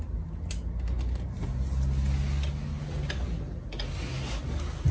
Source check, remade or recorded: recorded